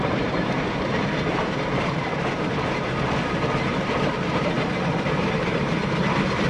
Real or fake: fake